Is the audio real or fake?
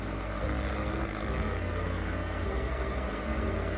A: fake